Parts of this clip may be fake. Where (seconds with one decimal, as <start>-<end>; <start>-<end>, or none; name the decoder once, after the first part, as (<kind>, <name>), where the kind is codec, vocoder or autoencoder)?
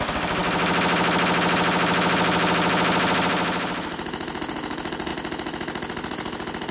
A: none